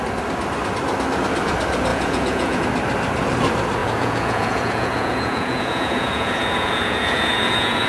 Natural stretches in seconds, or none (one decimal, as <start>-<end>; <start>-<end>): 0.0-1.9; 2.6-3.8